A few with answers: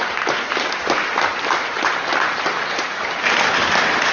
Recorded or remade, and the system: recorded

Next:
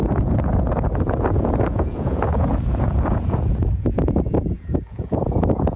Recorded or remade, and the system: remade, vocoder, Vocos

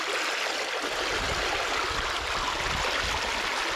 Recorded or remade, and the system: recorded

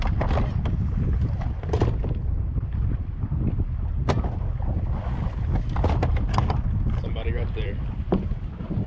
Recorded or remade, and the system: recorded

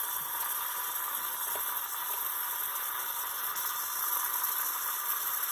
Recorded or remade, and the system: recorded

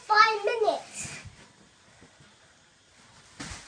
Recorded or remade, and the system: recorded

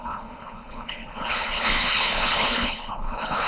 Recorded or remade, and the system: remade, codec, HILCodec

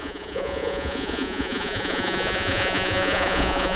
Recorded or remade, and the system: remade, vocoder, Vocos